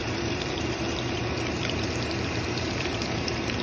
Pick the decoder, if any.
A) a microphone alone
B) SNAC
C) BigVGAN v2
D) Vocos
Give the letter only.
C